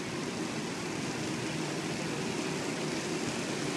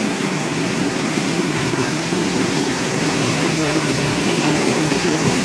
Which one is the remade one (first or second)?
second